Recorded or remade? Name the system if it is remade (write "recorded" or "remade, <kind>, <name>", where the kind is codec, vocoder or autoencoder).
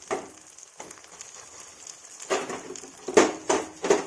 recorded